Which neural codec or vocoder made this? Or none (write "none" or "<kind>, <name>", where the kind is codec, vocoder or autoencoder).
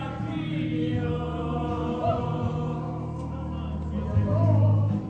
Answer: none